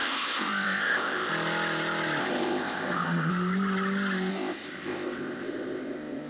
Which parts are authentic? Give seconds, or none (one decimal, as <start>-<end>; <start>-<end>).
1.3-2.2; 3.3-4.3